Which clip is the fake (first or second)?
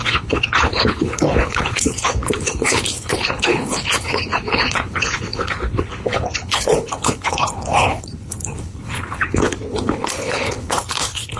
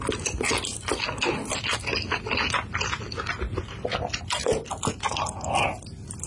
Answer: first